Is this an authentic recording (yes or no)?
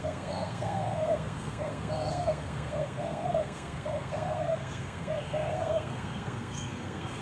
no